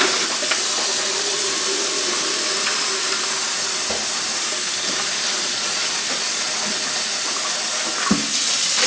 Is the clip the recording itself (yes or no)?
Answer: yes